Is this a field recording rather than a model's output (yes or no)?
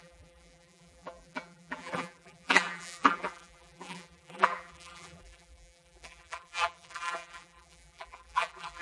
no